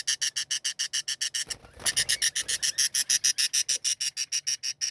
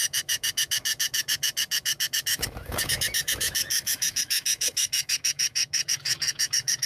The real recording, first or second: first